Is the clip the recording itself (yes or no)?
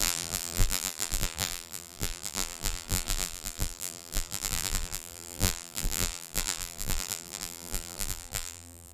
no